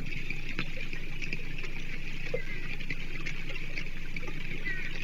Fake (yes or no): no